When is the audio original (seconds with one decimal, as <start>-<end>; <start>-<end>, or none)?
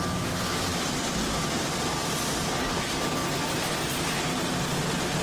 0.0-0.7; 1.4-2.0; 2.8-3.2; 4.4-5.2